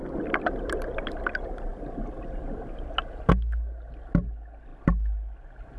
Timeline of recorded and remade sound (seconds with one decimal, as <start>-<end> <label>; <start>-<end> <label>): 0.0-5.8 recorded